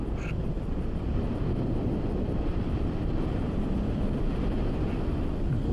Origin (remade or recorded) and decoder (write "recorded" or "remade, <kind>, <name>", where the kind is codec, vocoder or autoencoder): recorded